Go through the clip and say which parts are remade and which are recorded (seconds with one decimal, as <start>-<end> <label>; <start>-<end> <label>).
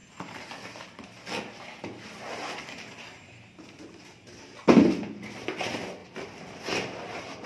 0.0-6.0 recorded; 6.0-6.6 remade; 6.6-7.5 recorded